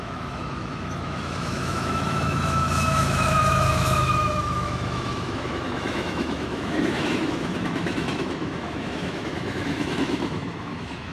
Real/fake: fake